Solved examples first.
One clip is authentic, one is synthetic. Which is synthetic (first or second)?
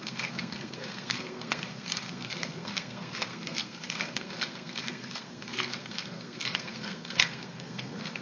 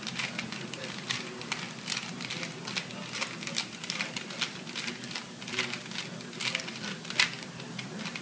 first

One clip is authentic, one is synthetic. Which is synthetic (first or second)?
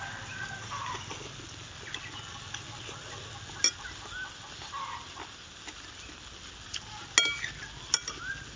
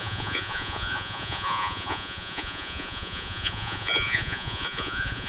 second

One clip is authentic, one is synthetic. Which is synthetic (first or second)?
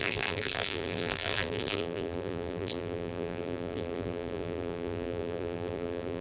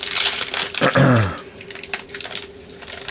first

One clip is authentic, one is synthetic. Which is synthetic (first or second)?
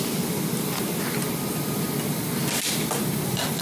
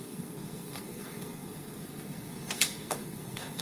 second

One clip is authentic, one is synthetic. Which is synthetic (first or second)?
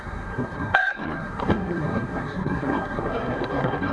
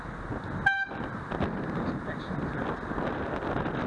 first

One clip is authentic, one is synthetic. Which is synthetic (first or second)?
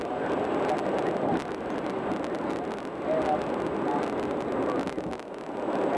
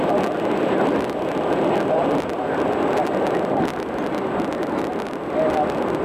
second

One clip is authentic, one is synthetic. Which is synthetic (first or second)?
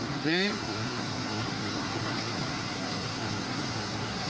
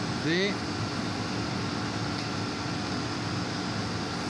first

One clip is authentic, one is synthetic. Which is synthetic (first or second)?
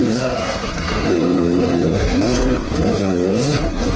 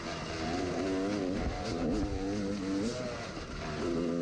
first